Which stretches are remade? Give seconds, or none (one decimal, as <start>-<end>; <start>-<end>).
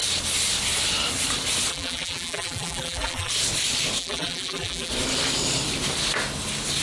1.7-3.3; 4.0-4.9